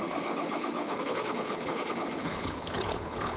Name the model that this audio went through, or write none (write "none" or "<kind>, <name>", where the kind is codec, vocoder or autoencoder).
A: codec, HILCodec